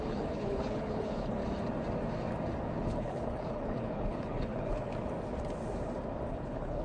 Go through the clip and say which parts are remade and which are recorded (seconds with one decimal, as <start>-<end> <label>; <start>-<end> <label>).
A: 0.0-1.4 remade; 1.4-2.8 recorded; 2.8-4.9 remade; 4.9-6.3 recorded; 6.3-6.8 remade